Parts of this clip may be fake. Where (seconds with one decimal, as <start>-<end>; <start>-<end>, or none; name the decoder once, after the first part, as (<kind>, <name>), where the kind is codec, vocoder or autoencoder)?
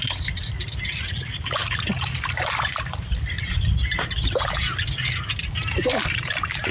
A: none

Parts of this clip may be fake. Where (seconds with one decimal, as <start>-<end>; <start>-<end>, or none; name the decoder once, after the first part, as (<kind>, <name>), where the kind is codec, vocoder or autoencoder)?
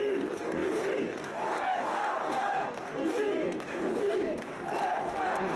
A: 0.0-4.5 (codec, DAC); 5.0-5.6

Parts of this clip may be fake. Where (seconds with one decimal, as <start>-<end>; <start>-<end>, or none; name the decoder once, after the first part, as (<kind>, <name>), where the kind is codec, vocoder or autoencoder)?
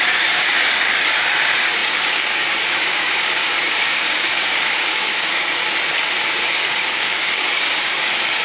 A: 0.0-5.6 (codec, DAC); 6.3-8.4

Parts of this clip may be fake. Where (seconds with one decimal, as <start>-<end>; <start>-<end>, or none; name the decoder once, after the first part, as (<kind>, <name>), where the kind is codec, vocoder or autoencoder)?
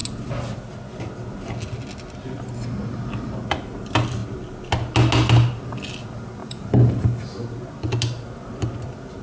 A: 6.4-7.2 (vocoder, BigVGAN v2)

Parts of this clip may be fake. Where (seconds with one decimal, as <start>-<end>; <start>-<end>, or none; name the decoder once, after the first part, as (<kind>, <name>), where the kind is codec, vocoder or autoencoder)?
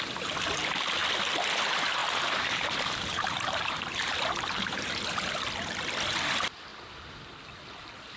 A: 2.0-5.0 (vocoder, BigVGAN v2); 6.7-7.4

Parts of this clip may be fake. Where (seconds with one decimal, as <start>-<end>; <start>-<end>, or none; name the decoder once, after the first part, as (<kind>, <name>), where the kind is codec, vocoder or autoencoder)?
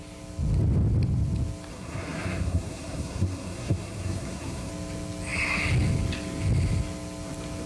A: 1.7-4.7 (codec, SNAC)